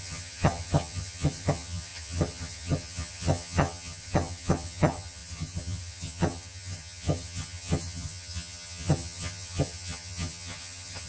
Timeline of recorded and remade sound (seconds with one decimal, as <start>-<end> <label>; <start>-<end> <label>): 0.0-11.1 remade